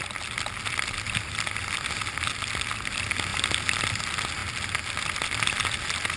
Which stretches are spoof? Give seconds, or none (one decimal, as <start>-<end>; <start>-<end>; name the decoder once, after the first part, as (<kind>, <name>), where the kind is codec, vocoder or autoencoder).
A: none